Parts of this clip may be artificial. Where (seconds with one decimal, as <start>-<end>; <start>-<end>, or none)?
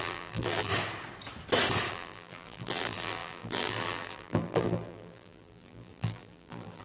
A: 0.0-0.7; 1.9-6.8